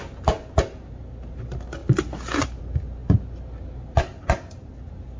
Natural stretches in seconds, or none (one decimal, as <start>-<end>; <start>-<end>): 0.0-5.2